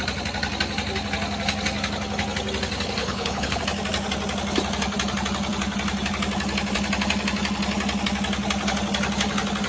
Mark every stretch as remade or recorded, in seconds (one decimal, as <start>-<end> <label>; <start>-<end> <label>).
0.0-3.0 recorded; 3.0-3.6 remade; 3.6-9.7 recorded